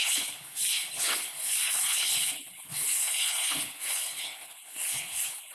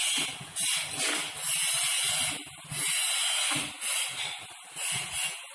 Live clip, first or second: second